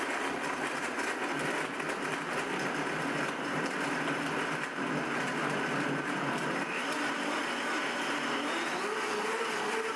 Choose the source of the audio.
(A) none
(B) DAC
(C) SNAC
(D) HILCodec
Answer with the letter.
A